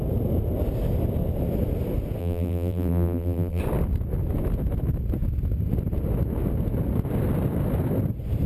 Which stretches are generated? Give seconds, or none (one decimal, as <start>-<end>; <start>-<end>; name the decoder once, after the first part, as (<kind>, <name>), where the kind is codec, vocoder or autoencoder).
2.2-3.6 (vocoder, BigVGAN v2)